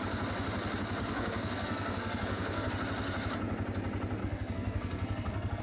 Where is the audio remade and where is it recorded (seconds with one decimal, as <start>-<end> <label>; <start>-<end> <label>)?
0.0-1.0 recorded; 1.0-2.7 remade; 2.7-4.2 recorded; 4.2-5.6 remade

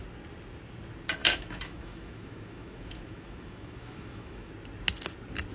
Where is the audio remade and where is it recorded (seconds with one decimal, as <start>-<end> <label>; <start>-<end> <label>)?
0.0-1.2 recorded; 1.2-4.5 remade; 4.5-5.5 recorded

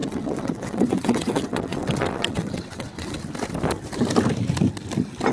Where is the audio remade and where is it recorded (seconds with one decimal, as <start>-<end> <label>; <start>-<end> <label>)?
0.0-3.2 remade; 3.2-5.3 recorded

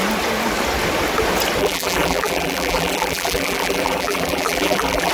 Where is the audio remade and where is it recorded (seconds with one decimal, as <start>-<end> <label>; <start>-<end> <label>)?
0.0-1.6 recorded; 1.6-5.1 remade